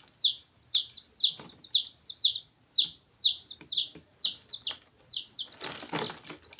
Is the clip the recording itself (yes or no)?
yes